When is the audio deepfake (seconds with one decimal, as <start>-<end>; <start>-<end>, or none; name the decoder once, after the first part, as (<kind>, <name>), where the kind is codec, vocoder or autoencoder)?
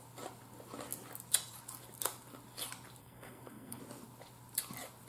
3.0-3.8 (codec, SNAC)